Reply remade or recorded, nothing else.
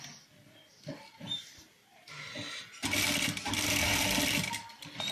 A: recorded